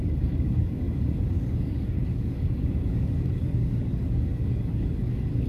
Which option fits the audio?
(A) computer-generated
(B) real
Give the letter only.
A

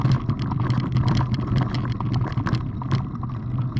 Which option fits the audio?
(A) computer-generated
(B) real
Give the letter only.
B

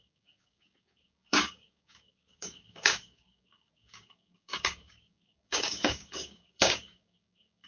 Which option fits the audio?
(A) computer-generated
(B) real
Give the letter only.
A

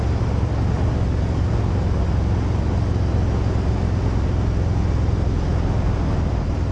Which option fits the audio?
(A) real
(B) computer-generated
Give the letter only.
A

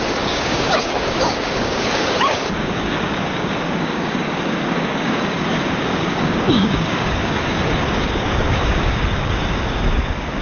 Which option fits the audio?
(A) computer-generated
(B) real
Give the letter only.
A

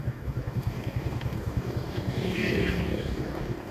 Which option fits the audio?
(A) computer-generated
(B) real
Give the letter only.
A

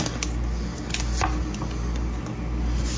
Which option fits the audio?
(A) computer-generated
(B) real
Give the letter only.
B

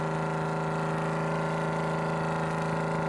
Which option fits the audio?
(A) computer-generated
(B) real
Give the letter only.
B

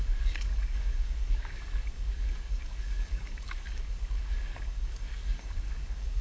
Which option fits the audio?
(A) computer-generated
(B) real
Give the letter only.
A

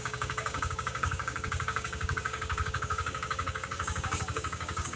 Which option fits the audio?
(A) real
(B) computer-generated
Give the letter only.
B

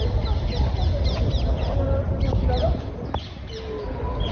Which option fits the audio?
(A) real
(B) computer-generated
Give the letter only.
A